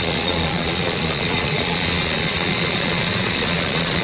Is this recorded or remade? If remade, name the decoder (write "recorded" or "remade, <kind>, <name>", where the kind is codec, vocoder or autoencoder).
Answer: remade, vocoder, Vocos